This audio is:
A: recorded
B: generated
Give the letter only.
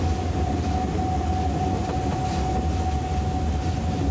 A